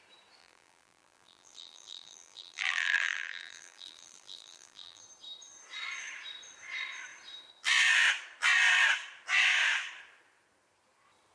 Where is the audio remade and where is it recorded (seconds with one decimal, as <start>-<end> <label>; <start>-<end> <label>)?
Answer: 0.0-0.4 recorded; 0.4-5.0 remade; 5.0-11.3 recorded